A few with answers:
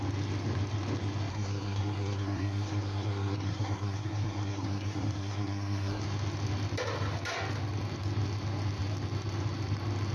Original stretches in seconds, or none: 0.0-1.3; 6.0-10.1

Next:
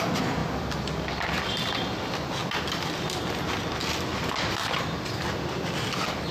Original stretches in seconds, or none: 0.0-6.3

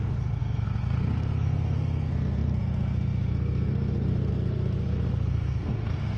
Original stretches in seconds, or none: none

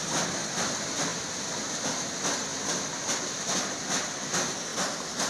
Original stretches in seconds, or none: 0.0-1.1; 2.0-2.5; 3.1-4.7

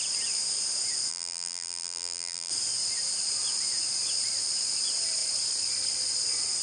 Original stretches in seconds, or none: 0.0-1.1; 2.5-6.6

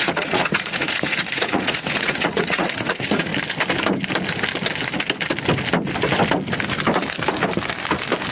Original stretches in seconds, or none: 3.3-8.3

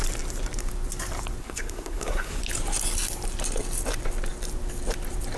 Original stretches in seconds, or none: 0.0-1.4; 2.4-5.4